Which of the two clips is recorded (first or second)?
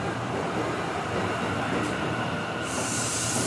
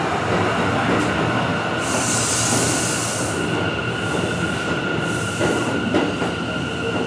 second